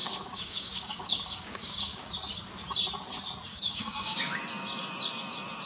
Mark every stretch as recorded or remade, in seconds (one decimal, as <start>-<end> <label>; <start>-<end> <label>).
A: 0.0-2.1 remade; 2.1-3.5 recorded; 3.5-4.4 remade; 4.4-5.7 recorded